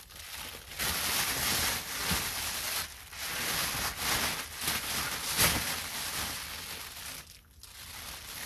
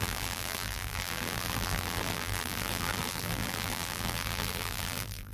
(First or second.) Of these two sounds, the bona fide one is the first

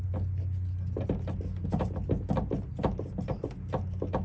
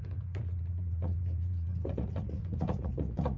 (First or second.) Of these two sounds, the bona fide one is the first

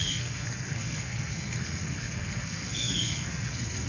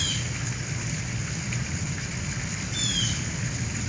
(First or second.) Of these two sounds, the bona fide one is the second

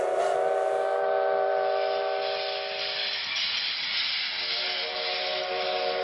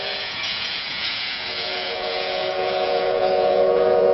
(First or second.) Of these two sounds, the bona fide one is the first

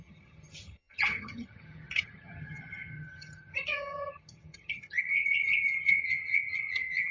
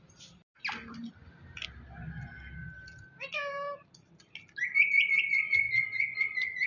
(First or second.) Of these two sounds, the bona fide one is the second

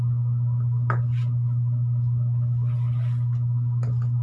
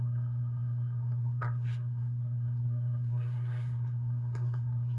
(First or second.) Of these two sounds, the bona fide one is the first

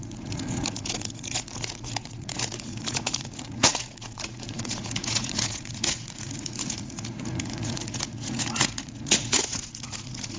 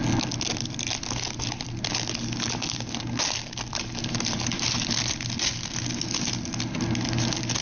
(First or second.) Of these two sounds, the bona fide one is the second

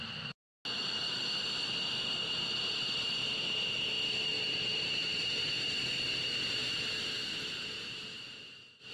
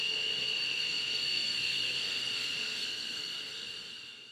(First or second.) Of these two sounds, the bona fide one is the first